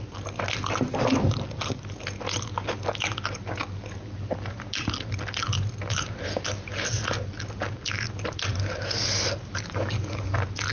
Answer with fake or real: real